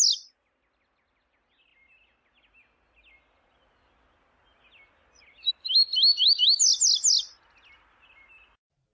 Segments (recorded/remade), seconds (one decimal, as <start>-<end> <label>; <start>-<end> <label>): 0.0-8.9 recorded